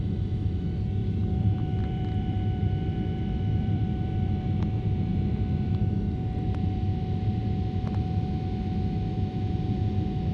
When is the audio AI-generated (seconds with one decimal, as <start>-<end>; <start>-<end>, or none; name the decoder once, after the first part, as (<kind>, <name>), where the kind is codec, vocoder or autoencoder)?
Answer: 1.0-4.6 (vocoder, BigVGAN v2); 5.1-5.7